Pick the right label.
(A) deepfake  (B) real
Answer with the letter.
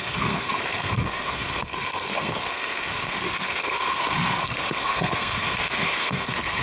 A